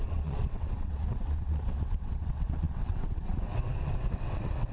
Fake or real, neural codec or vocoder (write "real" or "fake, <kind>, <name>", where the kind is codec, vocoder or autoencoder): fake, vocoder, WaveNeXt